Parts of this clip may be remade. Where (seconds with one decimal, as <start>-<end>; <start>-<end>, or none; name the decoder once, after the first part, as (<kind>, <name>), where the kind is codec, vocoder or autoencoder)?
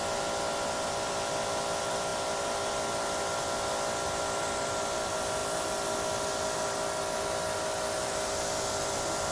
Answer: none